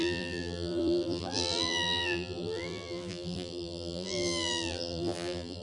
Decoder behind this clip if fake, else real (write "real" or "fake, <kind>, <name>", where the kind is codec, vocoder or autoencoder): fake, vocoder, BigVGAN v2